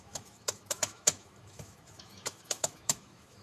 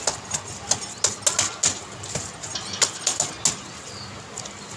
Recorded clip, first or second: second